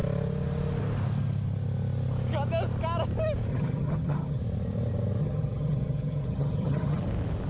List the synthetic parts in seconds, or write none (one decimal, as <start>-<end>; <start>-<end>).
3.5-4.4; 5.2-7.0